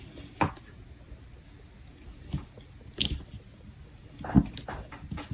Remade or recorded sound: recorded